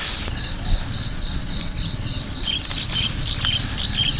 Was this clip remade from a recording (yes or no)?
yes